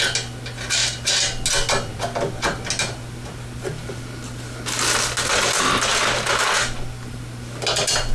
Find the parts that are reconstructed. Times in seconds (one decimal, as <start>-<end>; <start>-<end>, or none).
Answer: none

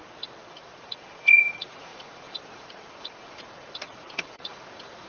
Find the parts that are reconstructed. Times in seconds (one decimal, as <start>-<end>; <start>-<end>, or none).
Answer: 0.5-5.1

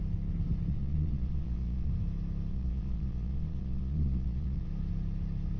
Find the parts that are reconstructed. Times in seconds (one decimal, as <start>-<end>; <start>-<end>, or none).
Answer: 0.7-1.9; 2.5-4.7

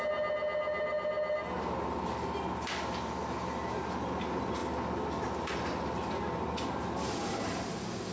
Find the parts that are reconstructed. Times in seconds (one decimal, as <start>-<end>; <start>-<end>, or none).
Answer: none

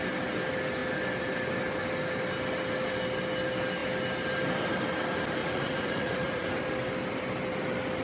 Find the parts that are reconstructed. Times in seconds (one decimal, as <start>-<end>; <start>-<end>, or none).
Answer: 5.4-6.5